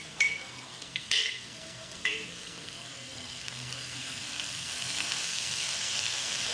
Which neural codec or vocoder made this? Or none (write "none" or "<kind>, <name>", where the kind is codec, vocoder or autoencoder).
codec, SNAC